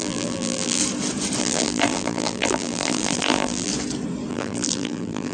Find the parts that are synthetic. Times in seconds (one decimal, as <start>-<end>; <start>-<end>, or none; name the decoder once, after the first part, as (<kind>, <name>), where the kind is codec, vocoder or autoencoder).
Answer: 0.0-0.8 (vocoder, BigVGAN v2); 1.4-3.7; 4.3-5.3